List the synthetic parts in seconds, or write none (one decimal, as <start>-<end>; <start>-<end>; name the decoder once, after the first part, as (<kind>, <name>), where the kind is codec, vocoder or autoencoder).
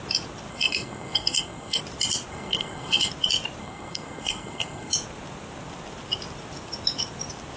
0.5-1.8 (codec, SNAC); 2.3-3.1; 3.6-4.9